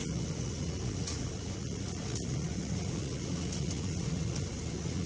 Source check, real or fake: fake